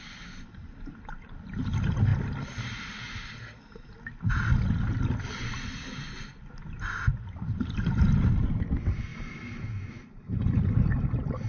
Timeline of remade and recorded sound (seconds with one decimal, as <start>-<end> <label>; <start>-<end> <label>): 0.0-11.5 recorded

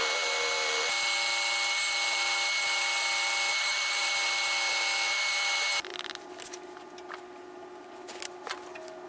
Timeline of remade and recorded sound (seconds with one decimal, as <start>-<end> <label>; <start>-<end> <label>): 0.0-3.5 recorded; 3.5-4.1 remade; 4.1-9.1 recorded

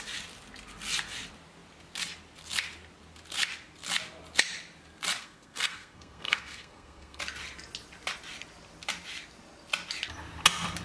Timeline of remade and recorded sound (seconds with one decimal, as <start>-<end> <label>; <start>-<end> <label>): 0.0-5.2 recorded; 5.2-7.2 remade; 7.2-10.8 recorded

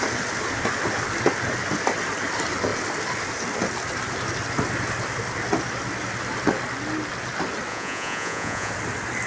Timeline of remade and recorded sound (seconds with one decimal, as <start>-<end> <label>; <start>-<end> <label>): 0.0-7.7 recorded; 7.7-8.7 remade; 8.7-9.3 recorded